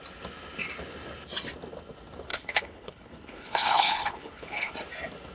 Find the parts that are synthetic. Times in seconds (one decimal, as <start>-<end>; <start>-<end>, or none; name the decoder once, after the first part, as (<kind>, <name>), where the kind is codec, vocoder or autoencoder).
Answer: 2.3-4.7 (codec, HILCodec)